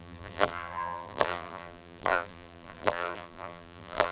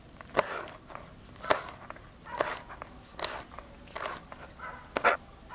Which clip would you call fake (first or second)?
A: first